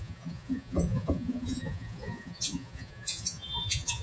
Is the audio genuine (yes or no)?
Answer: no